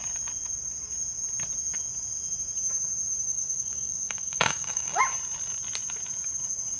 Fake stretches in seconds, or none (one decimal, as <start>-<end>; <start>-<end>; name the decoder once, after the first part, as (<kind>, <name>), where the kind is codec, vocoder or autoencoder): 3.3-5.0 (codec, DAC)